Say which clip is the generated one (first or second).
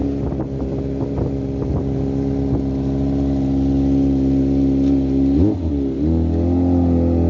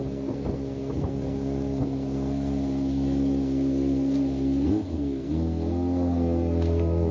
second